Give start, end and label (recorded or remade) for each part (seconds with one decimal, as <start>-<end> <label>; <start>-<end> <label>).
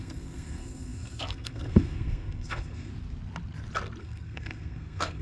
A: 0.0-2.9 remade; 2.9-4.0 recorded; 4.0-5.2 remade